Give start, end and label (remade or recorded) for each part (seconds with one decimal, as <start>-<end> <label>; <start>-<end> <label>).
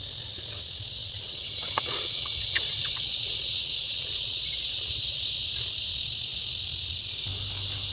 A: 0.0-1.0 recorded; 1.0-5.4 remade; 5.4-7.9 recorded